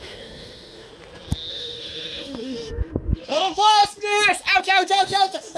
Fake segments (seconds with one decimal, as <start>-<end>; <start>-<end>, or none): 0.0-0.9; 1.5-3.8; 4.6-5.6